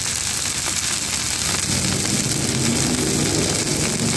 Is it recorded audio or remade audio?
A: recorded